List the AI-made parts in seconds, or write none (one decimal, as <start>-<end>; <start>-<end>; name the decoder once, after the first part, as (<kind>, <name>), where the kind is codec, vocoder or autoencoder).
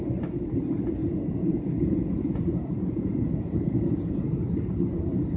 1.0-4.2 (vocoder, Vocos)